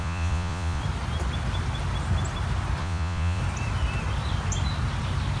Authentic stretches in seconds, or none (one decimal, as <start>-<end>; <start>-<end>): 0.8-2.8; 3.4-5.4